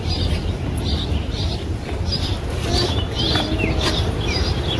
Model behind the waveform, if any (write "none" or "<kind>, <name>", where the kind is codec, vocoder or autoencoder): none